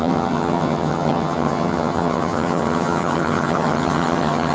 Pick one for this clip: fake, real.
fake